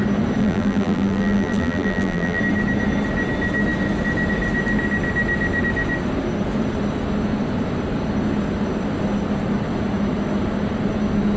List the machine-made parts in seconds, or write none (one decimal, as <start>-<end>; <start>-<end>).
0.4-2.4